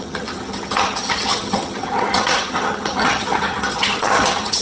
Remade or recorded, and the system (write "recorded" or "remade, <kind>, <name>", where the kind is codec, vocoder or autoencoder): remade, vocoder, HiFi-GAN